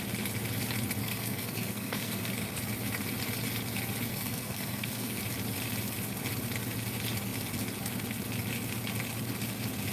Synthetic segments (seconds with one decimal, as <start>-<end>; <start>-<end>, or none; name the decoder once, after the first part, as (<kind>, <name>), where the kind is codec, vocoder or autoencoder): 1.0-2.3 (codec, SNAC); 4.1-5.2